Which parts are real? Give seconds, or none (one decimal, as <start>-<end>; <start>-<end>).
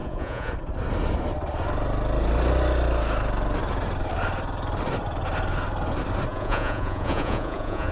0.5-6.3